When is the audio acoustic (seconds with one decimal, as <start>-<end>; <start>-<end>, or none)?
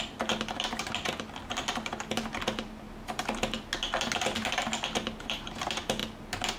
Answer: 0.0-6.6